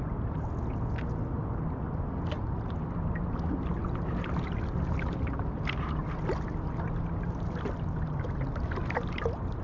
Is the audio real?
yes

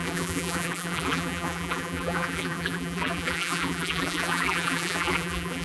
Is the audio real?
no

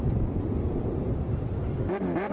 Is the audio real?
yes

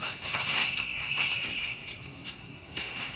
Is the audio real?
no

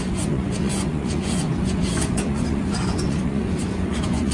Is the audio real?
no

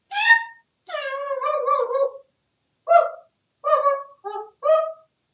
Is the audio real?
no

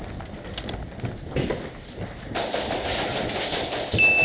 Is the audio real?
yes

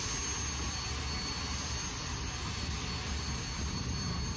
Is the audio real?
yes